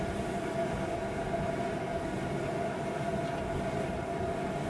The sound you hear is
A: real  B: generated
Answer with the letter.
A